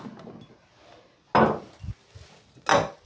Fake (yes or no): no